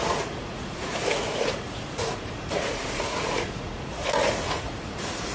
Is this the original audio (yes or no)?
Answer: no